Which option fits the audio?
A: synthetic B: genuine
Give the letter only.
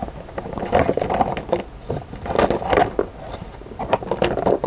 B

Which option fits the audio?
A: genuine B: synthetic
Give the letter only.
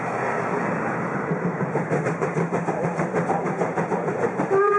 B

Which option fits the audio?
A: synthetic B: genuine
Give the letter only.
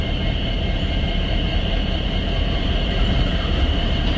A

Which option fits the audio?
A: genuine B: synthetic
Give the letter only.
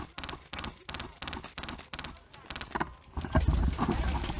A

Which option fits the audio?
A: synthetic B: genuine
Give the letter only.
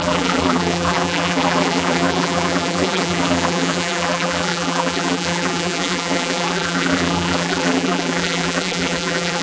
A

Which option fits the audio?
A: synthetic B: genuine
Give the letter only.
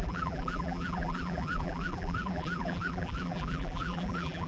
A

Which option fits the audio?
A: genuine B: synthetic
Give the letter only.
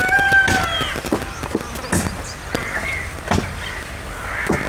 A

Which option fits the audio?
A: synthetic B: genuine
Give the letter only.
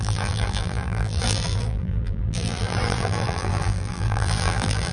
A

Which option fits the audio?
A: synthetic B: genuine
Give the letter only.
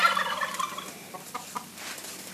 A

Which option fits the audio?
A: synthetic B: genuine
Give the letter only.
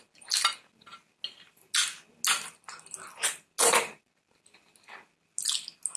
B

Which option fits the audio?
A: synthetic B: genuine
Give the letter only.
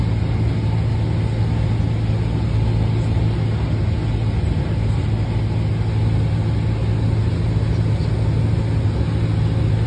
B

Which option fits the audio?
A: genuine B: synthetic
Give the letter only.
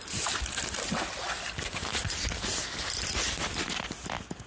A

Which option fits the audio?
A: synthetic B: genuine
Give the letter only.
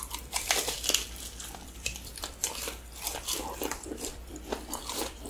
A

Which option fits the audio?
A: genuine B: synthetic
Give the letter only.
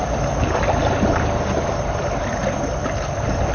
A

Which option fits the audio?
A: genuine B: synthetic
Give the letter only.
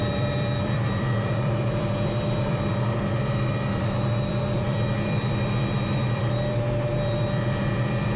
B